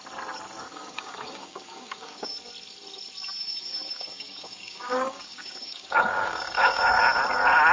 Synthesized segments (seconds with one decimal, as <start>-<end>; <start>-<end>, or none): 0.7-2.3; 3.4-7.0